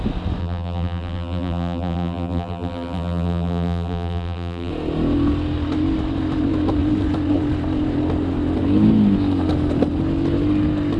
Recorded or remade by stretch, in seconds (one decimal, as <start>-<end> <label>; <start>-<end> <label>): 0.0-0.4 recorded; 0.4-4.7 remade; 4.7-11.0 recorded